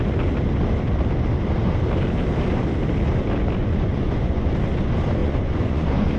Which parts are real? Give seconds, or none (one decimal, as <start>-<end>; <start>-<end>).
0.0-3.6; 4.5-5.2